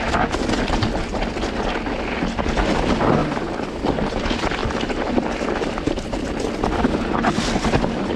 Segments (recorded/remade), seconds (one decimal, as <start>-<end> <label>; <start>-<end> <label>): 0.0-3.2 recorded; 3.2-3.7 remade; 3.7-4.6 recorded; 4.6-5.2 remade; 5.2-8.2 recorded